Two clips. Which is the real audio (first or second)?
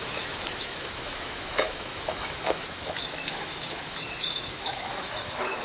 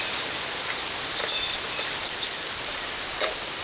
second